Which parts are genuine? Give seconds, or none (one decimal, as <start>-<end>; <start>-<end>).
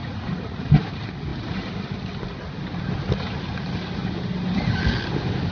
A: 0.7-5.5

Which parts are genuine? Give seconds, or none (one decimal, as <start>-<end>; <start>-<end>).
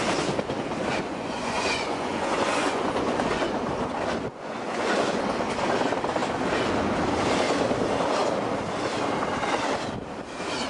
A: 0.0-0.9; 3.3-4.3; 5.2-10.7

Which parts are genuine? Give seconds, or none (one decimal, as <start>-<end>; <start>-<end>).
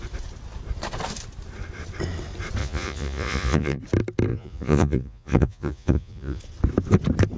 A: 0.0-2.6; 3.8-4.3; 6.4-7.4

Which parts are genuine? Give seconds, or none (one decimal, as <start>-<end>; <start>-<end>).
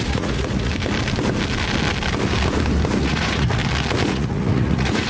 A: 0.7-3.0; 3.6-4.1